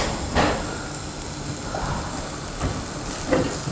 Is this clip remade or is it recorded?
recorded